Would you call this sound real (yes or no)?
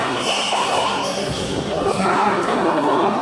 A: no